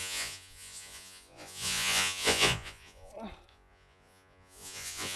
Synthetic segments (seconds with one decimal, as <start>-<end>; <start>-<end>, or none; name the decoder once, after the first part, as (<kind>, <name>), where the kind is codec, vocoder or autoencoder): 0.0-3.1 (vocoder, Vocos); 3.5-5.2